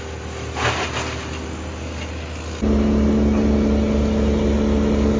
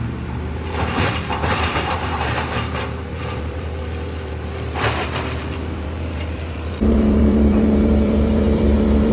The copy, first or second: second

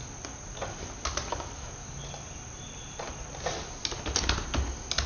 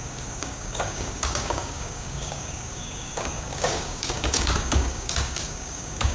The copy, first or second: second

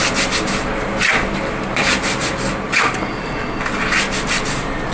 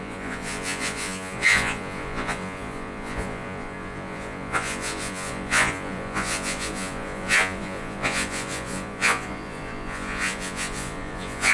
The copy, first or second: second